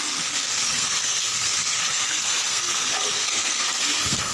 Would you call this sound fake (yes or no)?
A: yes